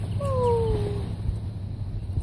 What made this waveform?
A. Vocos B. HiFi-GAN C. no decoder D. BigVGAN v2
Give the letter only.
C